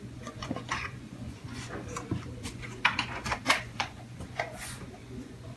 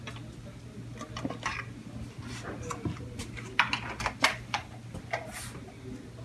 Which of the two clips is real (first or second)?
second